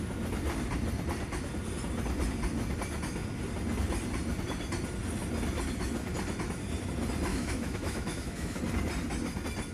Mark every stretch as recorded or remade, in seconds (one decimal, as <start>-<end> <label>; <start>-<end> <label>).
0.0-7.3 recorded; 7.3-8.6 remade; 8.6-9.7 recorded